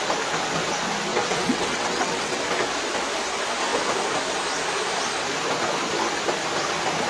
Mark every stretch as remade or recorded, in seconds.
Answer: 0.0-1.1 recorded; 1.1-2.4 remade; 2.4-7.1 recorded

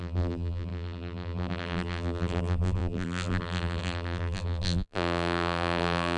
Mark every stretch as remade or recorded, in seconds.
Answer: 0.0-6.2 remade

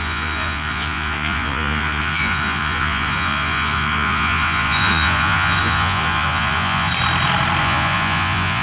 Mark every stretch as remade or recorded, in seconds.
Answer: 0.0-6.9 remade; 6.9-7.6 recorded; 7.6-8.6 remade

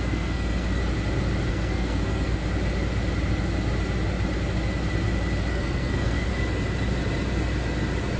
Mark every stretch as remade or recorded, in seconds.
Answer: 0.0-0.8 remade; 0.8-1.5 recorded; 1.5-2.4 remade; 2.4-5.5 recorded; 5.5-6.3 remade; 6.3-8.2 recorded

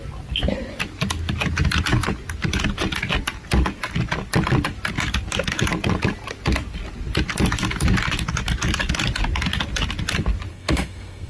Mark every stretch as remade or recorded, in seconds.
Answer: 0.0-10.5 recorded; 10.5-11.3 remade

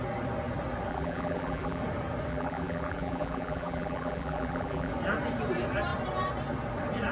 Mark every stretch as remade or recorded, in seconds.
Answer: 0.0-0.9 recorded; 0.9-1.8 remade; 1.8-2.3 recorded; 2.3-4.9 remade; 4.9-7.1 recorded

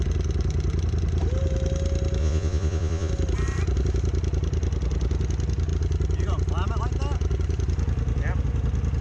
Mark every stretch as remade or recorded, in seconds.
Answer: 0.0-2.2 recorded; 2.2-3.1 remade; 3.1-9.0 recorded